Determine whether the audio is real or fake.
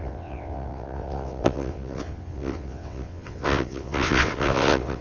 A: fake